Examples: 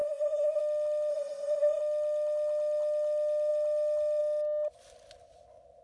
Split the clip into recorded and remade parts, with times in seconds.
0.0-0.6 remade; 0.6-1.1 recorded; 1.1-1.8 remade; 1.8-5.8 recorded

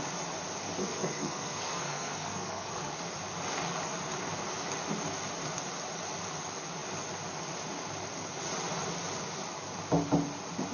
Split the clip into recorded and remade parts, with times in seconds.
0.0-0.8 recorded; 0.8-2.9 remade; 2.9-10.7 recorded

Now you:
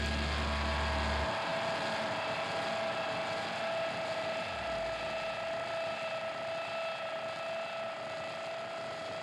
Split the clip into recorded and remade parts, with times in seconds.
0.0-9.2 recorded

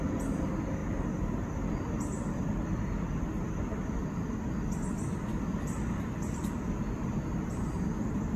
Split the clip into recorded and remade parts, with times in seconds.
0.0-8.4 recorded

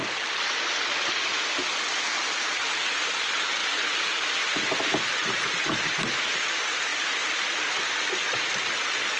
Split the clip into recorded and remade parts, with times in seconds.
0.0-9.2 recorded